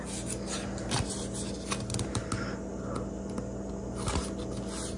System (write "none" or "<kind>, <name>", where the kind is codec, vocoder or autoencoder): none